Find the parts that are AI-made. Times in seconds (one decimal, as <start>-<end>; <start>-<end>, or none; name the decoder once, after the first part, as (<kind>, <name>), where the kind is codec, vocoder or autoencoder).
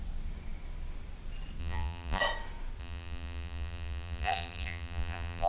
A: 1.6-2.2 (vocoder, BigVGAN v2); 2.8-5.5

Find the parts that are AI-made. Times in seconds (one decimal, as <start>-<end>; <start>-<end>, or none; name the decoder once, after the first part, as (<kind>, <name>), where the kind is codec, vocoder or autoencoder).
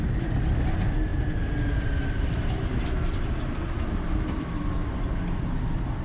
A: none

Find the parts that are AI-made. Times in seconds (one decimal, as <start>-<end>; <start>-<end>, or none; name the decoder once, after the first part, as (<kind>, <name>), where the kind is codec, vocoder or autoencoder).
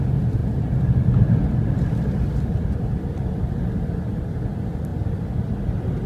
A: 0.4-3.8 (vocoder, BigVGAN v2)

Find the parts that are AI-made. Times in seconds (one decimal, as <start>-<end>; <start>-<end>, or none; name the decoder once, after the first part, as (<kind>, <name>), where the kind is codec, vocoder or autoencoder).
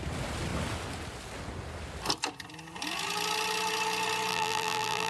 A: 4.3-5.1 (vocoder, BigVGAN v2)